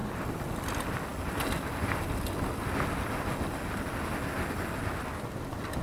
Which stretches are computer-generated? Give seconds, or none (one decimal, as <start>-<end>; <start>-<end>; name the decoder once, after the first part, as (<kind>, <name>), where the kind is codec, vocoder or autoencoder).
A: none